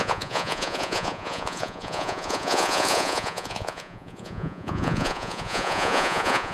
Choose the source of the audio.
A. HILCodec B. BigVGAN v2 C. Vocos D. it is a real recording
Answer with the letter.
C